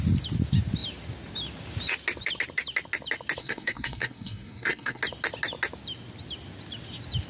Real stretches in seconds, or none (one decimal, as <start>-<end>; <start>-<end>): 0.0-3.4; 5.0-7.3